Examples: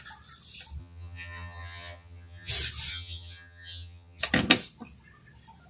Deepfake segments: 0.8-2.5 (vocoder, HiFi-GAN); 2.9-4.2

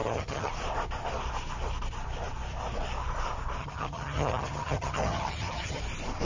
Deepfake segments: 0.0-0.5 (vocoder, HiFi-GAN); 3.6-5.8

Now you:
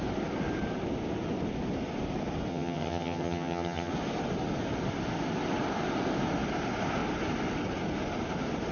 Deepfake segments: 2.5-3.9 (vocoder, HiFi-GAN)